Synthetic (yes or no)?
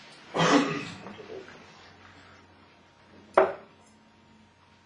no